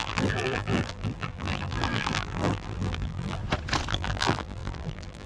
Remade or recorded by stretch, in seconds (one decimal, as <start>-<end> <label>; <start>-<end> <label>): 0.0-3.4 remade; 3.4-3.9 recorded; 3.9-5.3 remade